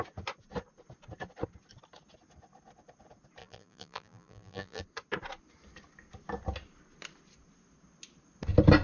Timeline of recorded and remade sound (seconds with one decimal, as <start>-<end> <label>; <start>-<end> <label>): 0.0-3.4 recorded; 3.4-4.8 remade; 4.8-8.8 recorded